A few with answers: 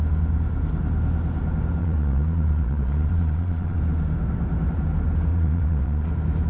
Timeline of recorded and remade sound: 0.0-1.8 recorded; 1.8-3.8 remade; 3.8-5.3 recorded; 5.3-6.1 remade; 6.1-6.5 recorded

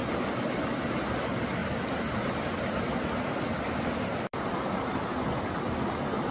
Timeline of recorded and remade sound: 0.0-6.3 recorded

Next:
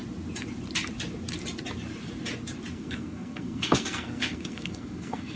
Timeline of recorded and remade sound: 0.0-2.7 recorded; 2.7-5.4 remade